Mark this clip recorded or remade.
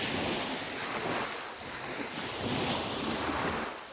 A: recorded